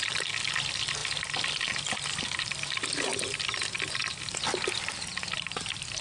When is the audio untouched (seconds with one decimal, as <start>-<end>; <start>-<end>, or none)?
0.0-6.0